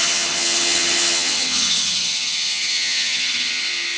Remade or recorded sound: remade